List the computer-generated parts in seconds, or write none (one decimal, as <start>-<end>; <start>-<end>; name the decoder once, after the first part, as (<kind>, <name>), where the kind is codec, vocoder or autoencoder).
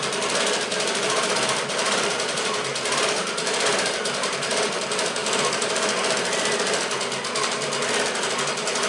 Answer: 0.7-4.8 (vocoder, BigVGAN v2)